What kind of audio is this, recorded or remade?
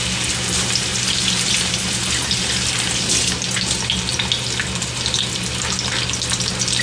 recorded